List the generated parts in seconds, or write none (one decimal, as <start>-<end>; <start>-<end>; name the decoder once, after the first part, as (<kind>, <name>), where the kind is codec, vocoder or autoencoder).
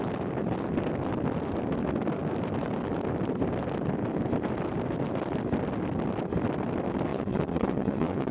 7.1-8.3 (vocoder, WaveNeXt)